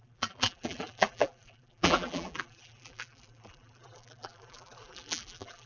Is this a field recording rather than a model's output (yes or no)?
no